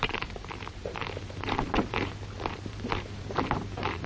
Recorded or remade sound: remade